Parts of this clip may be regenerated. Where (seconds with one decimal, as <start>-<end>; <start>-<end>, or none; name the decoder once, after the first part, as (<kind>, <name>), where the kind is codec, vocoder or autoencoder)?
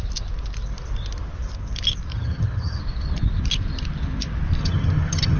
2.1-2.8 (vocoder, HiFi-GAN); 4.6-5.4